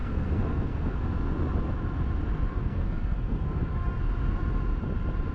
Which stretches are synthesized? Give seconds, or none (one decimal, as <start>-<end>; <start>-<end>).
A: 0.0-1.0; 2.5-4.0